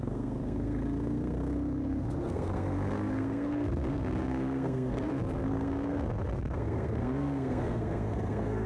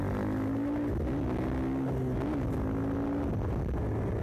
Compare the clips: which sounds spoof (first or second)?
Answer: first